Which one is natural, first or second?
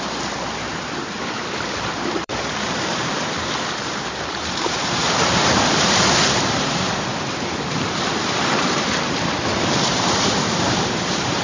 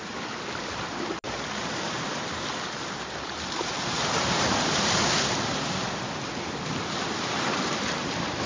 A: second